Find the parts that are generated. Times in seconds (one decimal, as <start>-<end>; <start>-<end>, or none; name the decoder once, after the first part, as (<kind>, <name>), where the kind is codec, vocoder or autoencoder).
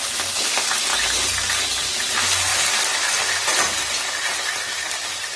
none